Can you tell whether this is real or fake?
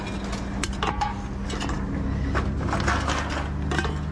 real